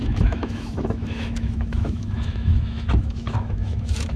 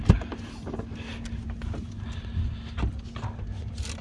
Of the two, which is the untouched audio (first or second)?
second